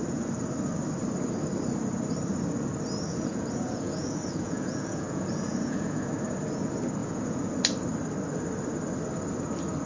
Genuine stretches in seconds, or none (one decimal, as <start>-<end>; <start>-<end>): 0.0-3.1; 6.1-7.0; 7.5-9.9